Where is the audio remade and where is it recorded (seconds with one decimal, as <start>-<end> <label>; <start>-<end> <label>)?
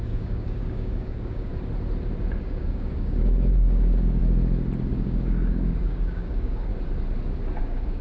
0.0-1.5 remade; 1.5-2.4 recorded; 2.4-4.2 remade; 4.2-4.9 recorded; 4.9-6.7 remade; 6.7-7.6 recorded; 7.6-8.0 remade